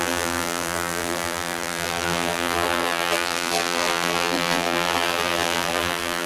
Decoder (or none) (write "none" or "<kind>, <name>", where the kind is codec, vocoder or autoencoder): vocoder, BigVGAN v2